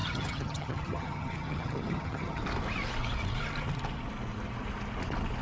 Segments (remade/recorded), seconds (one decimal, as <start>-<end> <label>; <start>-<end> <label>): 0.0-2.4 remade; 2.4-5.4 recorded